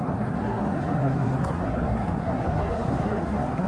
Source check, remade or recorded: remade